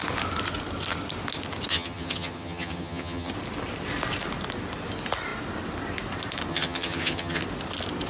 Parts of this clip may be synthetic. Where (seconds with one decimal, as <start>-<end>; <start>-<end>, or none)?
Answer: 1.7-3.3; 6.5-7.4

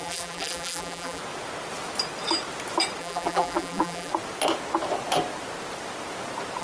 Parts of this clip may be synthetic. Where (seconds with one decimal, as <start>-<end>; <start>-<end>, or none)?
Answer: 0.0-1.2; 3.0-4.1